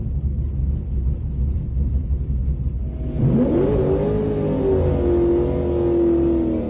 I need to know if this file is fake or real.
real